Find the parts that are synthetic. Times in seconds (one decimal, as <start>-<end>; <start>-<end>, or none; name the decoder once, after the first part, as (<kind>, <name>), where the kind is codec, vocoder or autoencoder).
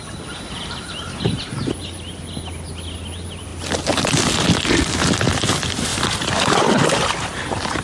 none